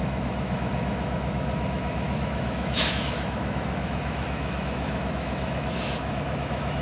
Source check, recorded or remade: remade